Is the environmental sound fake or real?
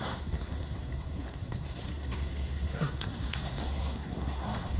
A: fake